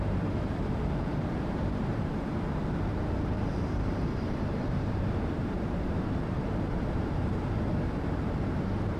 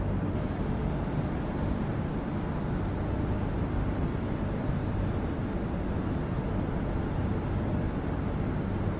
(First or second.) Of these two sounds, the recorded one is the second